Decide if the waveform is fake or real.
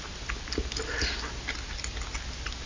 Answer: real